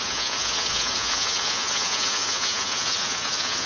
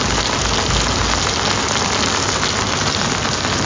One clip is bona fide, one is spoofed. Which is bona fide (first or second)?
second